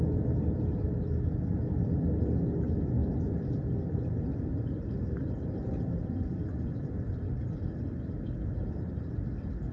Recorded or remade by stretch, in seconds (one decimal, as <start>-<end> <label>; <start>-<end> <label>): 0.0-3.0 recorded; 3.0-7.1 remade; 7.1-9.7 recorded